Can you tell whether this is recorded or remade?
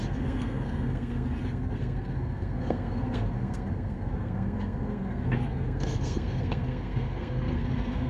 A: remade